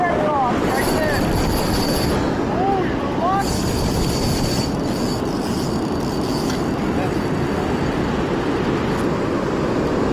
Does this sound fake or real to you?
real